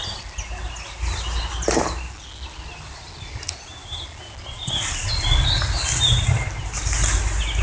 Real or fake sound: real